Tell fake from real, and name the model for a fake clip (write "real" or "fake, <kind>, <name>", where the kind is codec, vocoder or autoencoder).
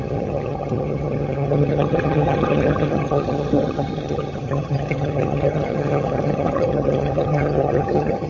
fake, vocoder, HiFi-GAN